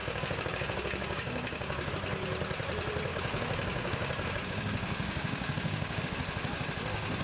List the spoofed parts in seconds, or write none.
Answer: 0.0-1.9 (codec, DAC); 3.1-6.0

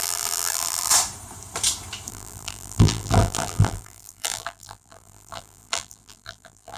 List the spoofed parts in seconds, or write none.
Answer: 0.0-0.9 (vocoder, BigVGAN v2); 2.1-6.8

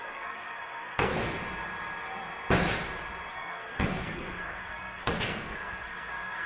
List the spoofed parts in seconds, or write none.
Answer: 0.0-1.1 (codec, SNAC); 3.3-6.5

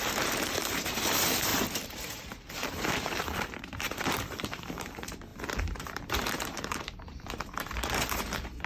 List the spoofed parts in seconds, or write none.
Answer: 0.0-8.7 (vocoder, BigVGAN v2)